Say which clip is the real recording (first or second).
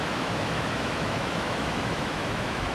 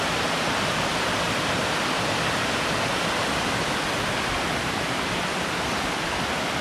second